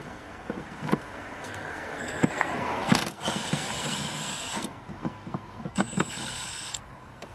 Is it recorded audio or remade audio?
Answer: remade